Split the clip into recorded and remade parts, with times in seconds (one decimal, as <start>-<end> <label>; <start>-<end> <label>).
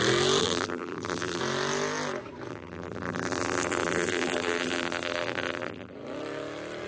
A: 0.0-0.4 recorded; 0.4-1.4 remade; 1.4-2.5 recorded; 2.5-5.9 remade; 5.9-6.9 recorded